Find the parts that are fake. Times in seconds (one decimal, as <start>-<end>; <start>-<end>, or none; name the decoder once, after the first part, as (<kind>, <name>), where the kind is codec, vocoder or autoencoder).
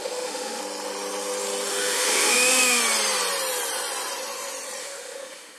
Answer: 0.0-0.6 (autoencoder, DAC-VAE); 1.7-2.8; 4.8-5.6